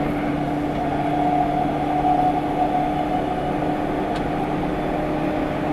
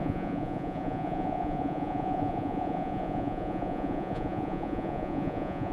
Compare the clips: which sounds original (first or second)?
first